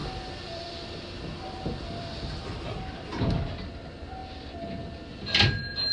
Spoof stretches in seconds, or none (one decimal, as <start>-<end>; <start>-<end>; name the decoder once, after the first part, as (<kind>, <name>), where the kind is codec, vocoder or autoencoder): 0.0-3.5 (vocoder, BigVGAN v2)